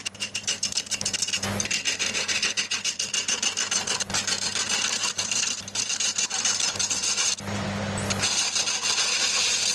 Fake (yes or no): yes